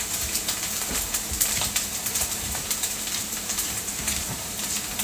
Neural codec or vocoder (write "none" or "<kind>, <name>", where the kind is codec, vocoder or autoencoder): vocoder, BigVGAN v2